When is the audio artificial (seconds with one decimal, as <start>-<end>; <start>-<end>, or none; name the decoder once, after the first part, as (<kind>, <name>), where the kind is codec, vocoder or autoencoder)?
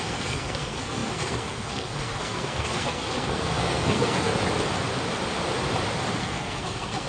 0.0-4.3 (codec, SNAC); 6.2-7.1